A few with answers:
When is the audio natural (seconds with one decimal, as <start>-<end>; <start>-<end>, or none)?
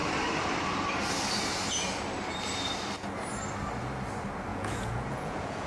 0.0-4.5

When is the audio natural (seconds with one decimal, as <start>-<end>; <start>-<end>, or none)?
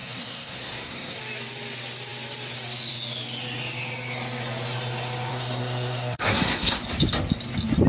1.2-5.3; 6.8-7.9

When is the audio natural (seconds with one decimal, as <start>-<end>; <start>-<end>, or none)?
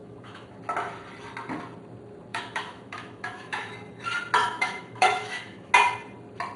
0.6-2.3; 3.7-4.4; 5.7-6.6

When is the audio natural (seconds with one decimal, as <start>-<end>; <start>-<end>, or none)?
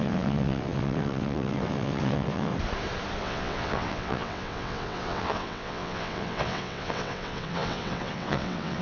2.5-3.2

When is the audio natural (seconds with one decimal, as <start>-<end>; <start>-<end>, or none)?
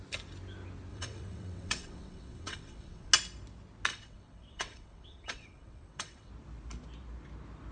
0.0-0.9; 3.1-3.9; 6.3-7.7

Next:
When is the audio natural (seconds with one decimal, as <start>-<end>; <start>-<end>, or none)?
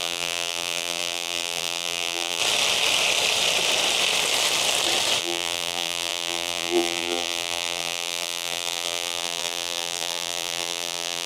2.4-5.2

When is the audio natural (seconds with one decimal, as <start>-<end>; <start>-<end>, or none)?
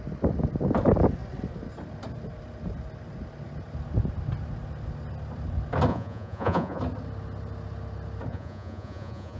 0.0-5.9; 6.8-8.3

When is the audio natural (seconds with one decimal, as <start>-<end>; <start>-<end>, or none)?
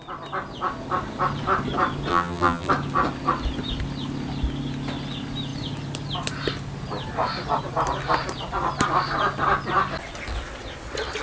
0.0-2.1; 2.7-11.2